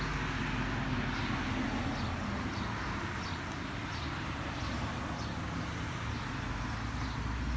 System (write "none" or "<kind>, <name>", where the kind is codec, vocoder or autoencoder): none